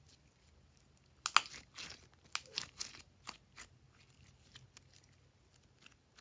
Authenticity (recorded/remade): recorded